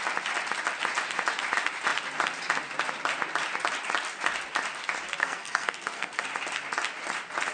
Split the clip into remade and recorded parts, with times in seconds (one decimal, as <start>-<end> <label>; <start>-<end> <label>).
0.0-5.2 recorded; 5.2-6.3 remade; 6.3-7.5 recorded

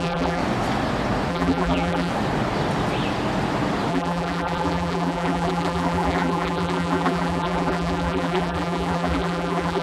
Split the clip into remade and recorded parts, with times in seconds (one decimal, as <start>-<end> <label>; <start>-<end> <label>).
0.0-0.4 remade; 0.4-1.3 recorded; 1.3-2.1 remade; 2.1-3.9 recorded; 3.9-9.8 remade

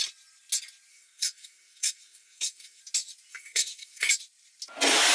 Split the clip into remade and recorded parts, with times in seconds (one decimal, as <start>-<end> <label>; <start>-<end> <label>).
0.0-0.9 recorded; 0.9-2.8 remade; 2.8-3.3 recorded; 3.3-4.1 remade; 4.1-5.1 recorded

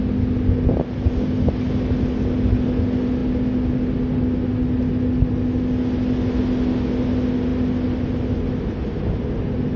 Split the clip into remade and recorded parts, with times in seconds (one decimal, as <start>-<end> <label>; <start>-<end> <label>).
0.0-9.8 recorded